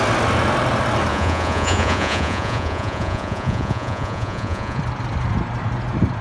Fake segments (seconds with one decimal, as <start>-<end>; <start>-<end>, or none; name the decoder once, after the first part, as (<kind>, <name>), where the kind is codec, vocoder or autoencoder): 1.1-4.8 (vocoder, Vocos)